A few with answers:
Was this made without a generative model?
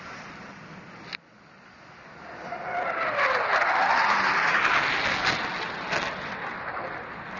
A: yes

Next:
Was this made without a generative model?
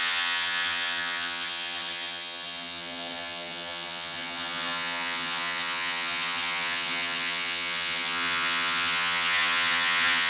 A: no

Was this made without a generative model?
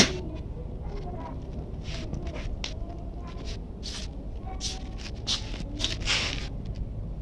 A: yes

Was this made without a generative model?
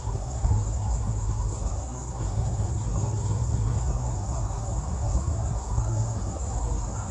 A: no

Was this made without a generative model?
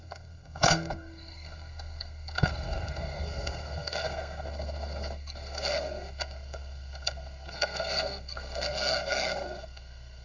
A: no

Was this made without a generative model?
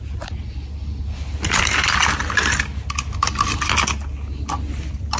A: yes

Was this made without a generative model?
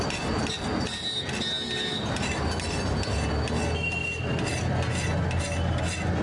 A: yes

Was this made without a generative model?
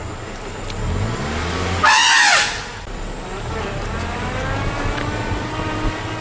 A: yes